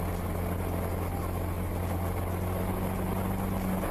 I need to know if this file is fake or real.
real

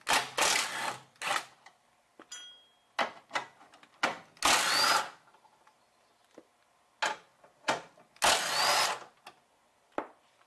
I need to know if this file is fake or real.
real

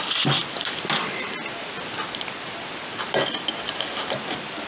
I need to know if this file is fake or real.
real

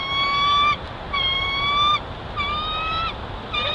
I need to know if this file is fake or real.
real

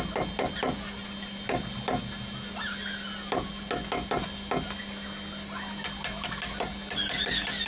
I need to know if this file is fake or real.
real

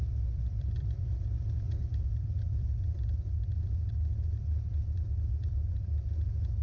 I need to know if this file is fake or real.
fake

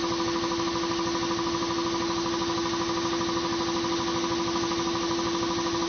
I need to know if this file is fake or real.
real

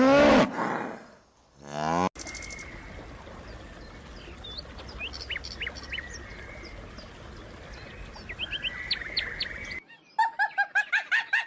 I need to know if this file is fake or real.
real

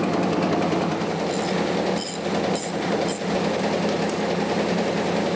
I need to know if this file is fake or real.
fake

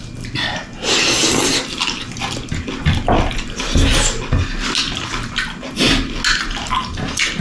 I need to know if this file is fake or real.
real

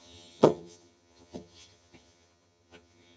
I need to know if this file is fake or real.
fake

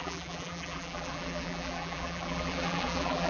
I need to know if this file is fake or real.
fake